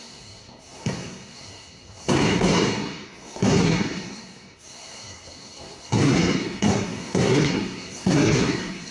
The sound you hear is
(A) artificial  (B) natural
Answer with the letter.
A